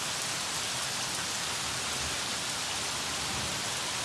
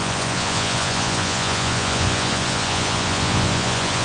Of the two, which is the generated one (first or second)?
second